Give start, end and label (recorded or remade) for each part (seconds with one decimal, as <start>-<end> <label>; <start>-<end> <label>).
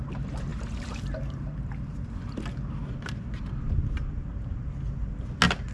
0.0-0.5 recorded; 0.5-2.2 remade; 2.2-5.7 recorded